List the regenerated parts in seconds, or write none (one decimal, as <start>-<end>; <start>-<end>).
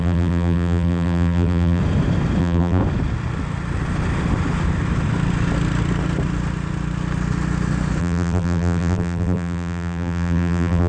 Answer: 0.0-1.8; 2.4-2.8; 8.0-10.9